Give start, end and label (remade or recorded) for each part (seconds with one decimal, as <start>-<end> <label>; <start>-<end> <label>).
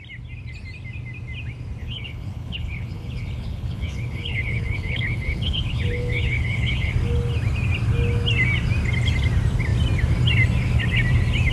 0.0-1.8 recorded; 1.8-6.9 remade; 6.9-11.5 recorded